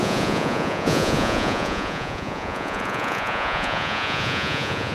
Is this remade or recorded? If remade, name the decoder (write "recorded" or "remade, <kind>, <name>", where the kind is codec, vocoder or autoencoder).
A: remade, vocoder, Vocos